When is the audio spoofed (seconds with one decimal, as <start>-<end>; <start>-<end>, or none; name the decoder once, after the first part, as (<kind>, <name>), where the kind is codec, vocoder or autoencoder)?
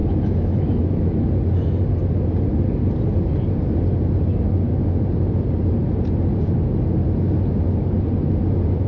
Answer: 0.0-1.1 (autoencoder, DAC-VAE)